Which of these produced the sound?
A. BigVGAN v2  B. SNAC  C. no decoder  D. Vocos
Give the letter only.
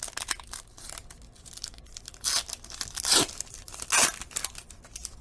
C